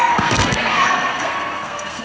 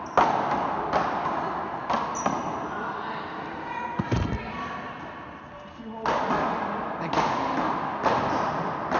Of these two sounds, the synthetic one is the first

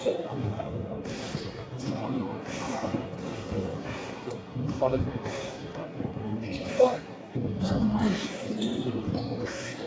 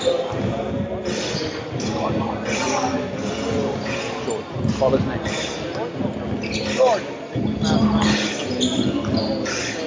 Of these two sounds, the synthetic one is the first